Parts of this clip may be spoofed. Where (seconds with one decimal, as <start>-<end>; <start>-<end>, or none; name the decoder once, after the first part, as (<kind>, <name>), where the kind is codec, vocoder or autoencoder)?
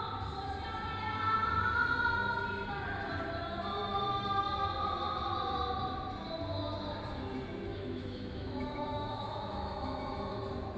7.7-10.4 (autoencoder, DAC-VAE)